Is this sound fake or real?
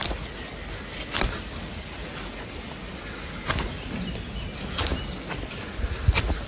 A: real